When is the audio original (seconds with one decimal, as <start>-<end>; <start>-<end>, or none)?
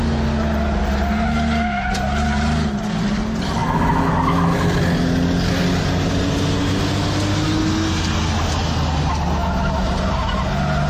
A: 0.0-10.9